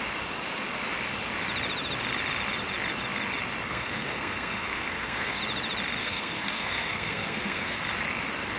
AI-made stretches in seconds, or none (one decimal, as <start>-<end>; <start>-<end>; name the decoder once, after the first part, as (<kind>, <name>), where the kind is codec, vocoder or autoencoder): 3.7-5.4 (codec, SNAC); 6.0-7.8